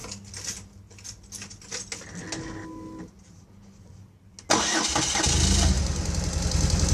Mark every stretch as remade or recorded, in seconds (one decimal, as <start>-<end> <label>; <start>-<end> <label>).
0.0-6.9 recorded